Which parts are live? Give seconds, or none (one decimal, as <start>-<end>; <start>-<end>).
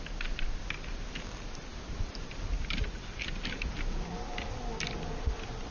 0.0-5.7